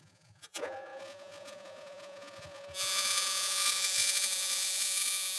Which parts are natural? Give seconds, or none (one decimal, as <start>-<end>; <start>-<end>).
none